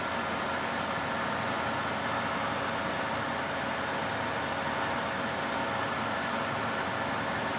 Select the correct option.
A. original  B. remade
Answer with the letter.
A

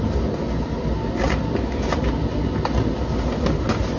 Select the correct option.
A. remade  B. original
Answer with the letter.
B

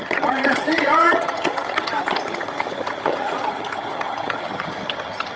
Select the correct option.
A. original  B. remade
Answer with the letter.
B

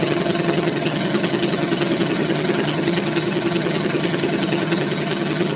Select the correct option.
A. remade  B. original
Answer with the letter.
A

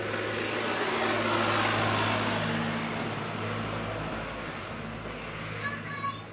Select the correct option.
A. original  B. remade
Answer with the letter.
A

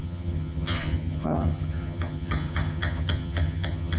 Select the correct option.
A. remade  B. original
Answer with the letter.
A